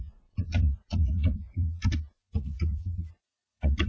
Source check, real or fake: fake